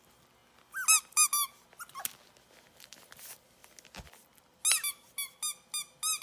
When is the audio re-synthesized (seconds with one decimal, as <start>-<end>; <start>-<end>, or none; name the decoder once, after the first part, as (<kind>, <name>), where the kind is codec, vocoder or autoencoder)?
none